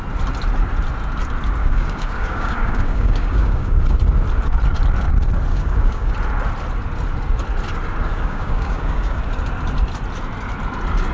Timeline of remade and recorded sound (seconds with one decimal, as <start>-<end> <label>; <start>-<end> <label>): 0.0-1.6 recorded; 1.6-3.8 remade; 3.8-5.5 recorded; 5.5-6.1 remade; 6.1-8.1 recorded; 8.1-9.2 remade; 9.2-11.1 recorded